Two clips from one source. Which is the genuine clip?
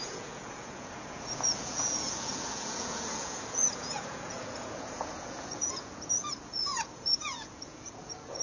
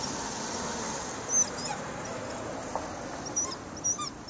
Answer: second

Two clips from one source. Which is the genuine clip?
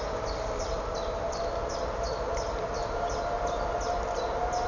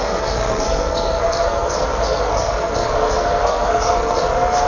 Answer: first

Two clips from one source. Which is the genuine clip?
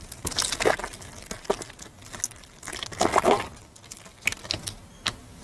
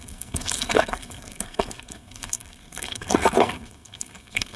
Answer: first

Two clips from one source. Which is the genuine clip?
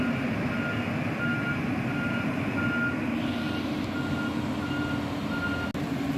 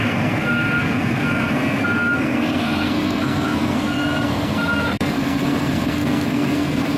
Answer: first